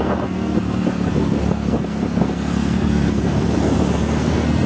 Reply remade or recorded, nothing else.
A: remade